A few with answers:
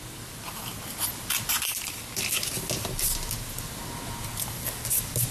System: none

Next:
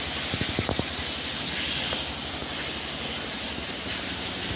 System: none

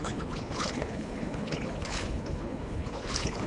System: codec, HILCodec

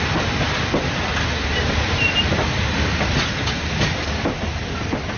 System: none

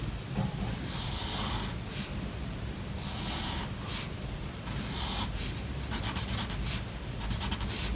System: none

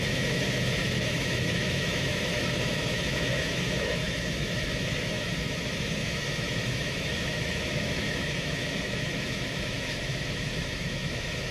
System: autoencoder, DAC-VAE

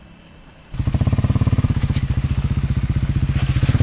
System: none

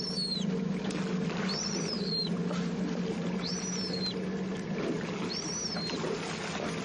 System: none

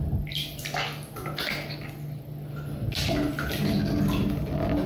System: none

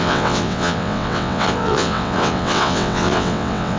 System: vocoder, WaveNeXt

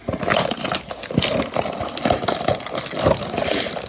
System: none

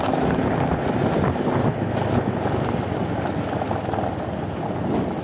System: none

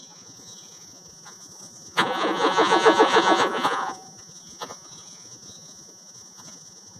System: vocoder, Vocos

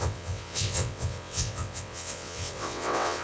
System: vocoder, WaveNeXt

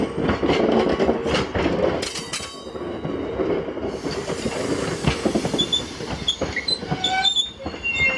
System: none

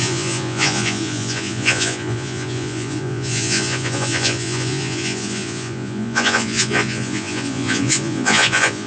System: vocoder, Vocos